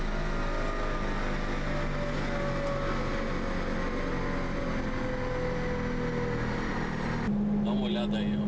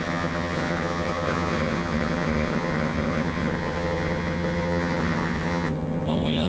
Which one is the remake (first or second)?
second